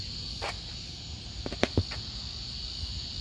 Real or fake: real